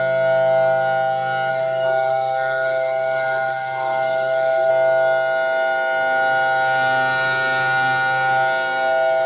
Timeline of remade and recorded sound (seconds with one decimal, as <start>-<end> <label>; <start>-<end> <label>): 0.0-1.5 recorded; 1.5-4.7 remade; 4.7-9.3 recorded